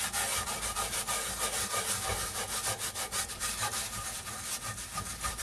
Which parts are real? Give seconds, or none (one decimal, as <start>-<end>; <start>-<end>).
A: 0.0-2.1